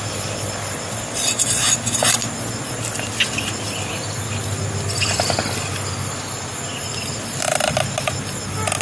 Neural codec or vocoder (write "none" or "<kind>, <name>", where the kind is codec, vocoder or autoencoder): none